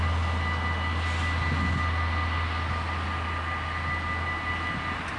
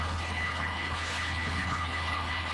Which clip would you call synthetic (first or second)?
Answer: second